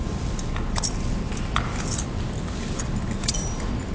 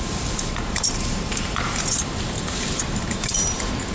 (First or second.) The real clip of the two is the first